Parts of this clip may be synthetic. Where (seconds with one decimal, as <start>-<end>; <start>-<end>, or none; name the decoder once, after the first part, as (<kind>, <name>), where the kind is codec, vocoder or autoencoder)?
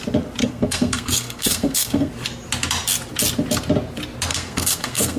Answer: 0.4-2.1 (codec, SNAC); 4.3-5.2